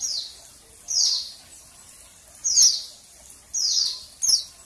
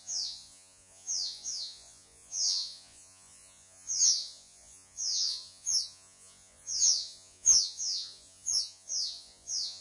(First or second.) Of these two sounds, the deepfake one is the second